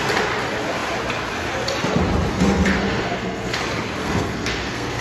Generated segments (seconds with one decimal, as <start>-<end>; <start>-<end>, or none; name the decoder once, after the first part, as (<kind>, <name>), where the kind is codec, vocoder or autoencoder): 2.3-3.6 (codec, SNAC); 4.0-5.0